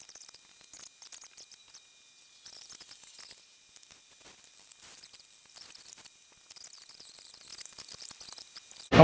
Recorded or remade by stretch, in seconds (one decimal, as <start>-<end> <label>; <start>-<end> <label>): 0.0-9.0 recorded